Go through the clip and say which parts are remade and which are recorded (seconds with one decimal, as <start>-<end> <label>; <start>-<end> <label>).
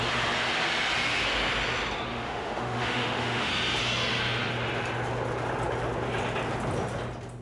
0.0-2.1 recorded; 2.1-3.5 remade; 3.5-7.4 recorded